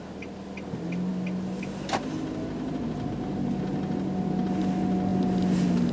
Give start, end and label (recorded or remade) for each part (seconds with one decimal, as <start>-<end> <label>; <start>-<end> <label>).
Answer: 0.0-5.9 recorded